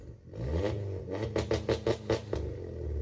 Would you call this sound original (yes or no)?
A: yes